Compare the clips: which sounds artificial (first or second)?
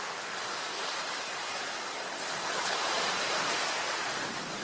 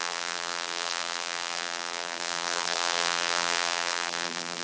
second